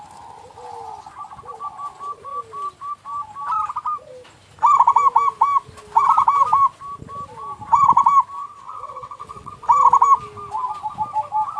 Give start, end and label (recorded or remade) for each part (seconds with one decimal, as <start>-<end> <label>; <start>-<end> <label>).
0.0-8.4 recorded; 8.4-9.5 remade; 9.5-11.6 recorded